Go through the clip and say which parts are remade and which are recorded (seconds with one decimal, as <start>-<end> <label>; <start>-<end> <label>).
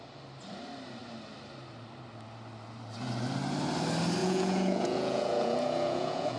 0.0-4.2 recorded; 4.2-6.4 remade